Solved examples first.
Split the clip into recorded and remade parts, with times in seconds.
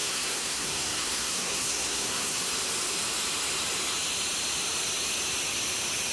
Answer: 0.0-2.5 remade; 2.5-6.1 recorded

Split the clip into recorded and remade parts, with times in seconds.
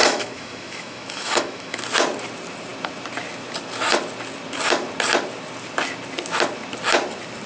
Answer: 0.0-1.8 remade; 1.8-7.5 recorded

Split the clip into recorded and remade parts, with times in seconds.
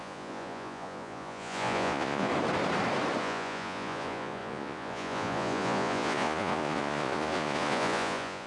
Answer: 0.0-2.3 remade; 2.3-3.2 recorded; 3.2-8.5 remade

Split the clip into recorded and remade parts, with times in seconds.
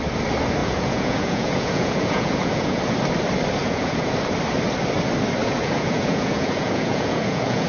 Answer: 0.0-0.6 recorded; 0.6-2.8 remade; 2.8-3.6 recorded; 3.6-4.1 remade; 4.1-5.4 recorded; 5.4-7.7 remade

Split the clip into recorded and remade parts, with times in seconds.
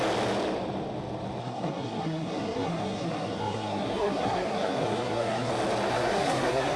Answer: 0.0-1.4 recorded; 1.4-5.5 remade; 5.5-5.9 recorded; 5.9-6.8 remade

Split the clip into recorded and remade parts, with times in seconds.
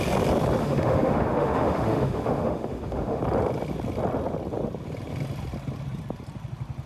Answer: 0.0-0.6 recorded; 0.6-3.2 remade; 3.2-6.9 recorded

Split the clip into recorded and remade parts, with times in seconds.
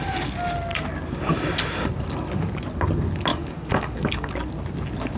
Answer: 0.0-3.3 recorded; 3.3-4.3 remade; 4.3-5.2 recorded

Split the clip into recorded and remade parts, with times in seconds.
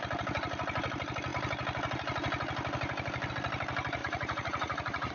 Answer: 0.0-4.0 recorded; 4.0-5.1 remade